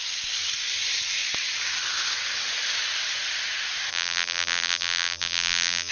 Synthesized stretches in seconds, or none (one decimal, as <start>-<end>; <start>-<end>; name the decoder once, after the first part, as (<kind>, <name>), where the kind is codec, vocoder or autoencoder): 3.9-5.9 (vocoder, BigVGAN v2)